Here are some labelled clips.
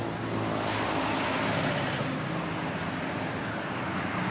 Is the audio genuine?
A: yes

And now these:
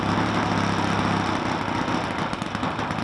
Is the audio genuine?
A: yes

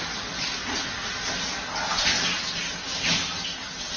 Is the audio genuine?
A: yes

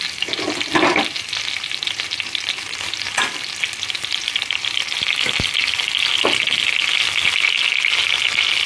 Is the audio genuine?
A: yes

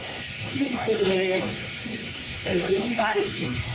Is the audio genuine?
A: no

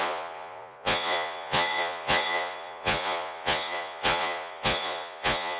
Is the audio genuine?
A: no